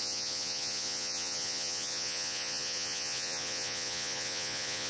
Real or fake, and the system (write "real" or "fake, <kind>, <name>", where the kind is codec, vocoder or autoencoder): fake, vocoder, Vocos